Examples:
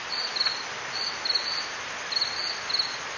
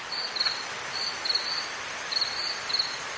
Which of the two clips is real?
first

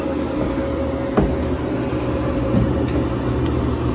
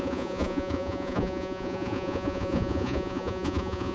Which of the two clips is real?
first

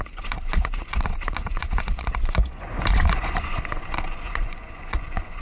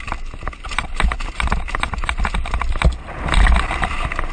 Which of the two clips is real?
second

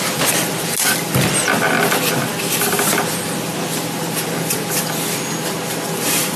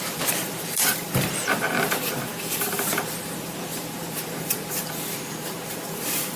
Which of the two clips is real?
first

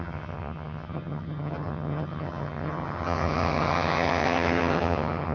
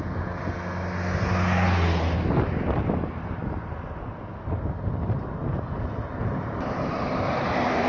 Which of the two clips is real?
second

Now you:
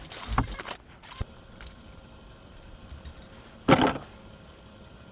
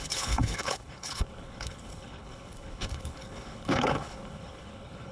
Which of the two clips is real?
first